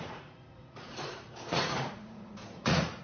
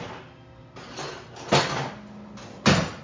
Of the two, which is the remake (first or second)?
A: first